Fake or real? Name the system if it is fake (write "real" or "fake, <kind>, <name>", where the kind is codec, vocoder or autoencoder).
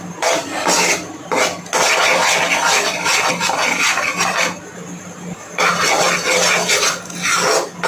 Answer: real